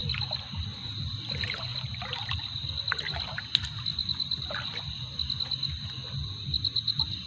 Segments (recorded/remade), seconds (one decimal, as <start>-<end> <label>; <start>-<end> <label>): 0.0-1.7 recorded; 1.7-3.0 remade; 3.0-3.9 recorded; 3.9-4.8 remade; 4.8-7.3 recorded